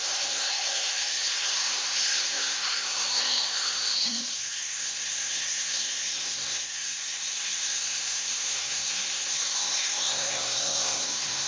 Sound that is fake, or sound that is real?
fake